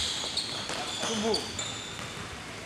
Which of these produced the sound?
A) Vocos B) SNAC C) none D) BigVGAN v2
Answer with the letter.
C